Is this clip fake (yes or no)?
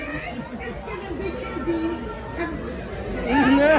no